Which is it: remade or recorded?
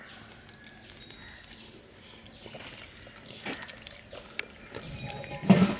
recorded